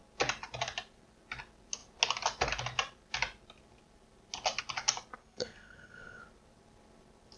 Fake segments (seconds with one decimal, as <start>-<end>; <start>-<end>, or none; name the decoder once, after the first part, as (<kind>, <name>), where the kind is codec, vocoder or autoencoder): 5.2-6.2 (codec, SNAC)